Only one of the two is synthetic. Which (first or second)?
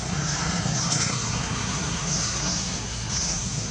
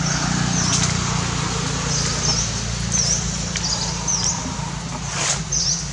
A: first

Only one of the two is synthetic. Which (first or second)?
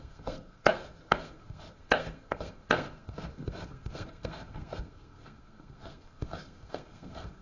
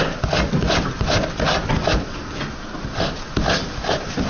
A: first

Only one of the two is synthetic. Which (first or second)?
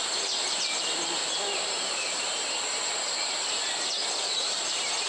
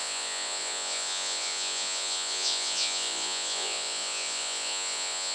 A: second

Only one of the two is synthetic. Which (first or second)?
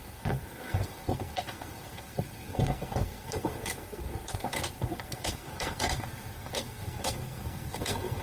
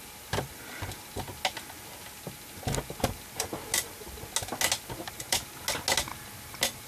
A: first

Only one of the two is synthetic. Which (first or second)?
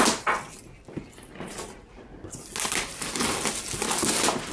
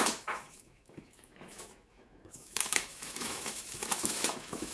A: second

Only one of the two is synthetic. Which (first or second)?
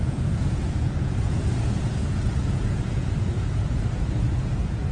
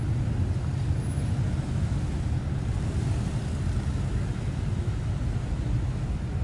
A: first